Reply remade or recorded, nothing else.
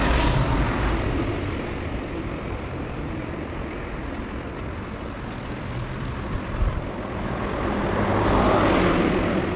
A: remade